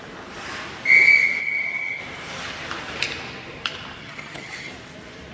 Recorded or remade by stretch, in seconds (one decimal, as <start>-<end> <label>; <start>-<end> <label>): 0.0-1.4 recorded; 1.4-2.0 remade; 2.0-4.0 recorded; 4.0-4.7 remade; 4.7-5.3 recorded